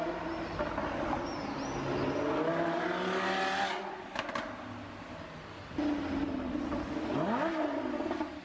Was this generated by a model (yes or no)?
no